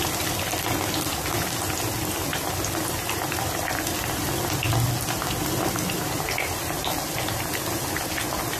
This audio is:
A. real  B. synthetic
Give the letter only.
A